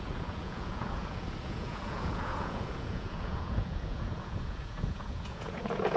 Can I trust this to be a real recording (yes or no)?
no